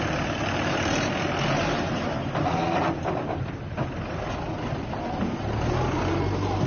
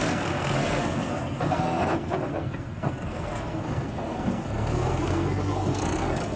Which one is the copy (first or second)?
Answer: second